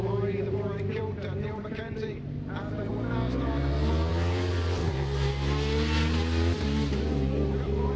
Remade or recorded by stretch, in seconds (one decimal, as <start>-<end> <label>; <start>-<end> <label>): 0.0-2.9 remade; 2.9-4.1 recorded; 4.1-4.8 remade; 4.8-7.0 recorded; 7.0-8.0 remade